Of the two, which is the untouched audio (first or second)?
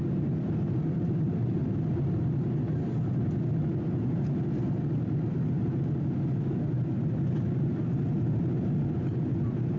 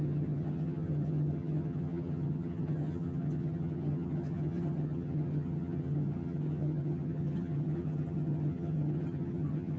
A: first